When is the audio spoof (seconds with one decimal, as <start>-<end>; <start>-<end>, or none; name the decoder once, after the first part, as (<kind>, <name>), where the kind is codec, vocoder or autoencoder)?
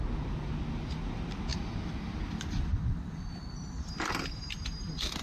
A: none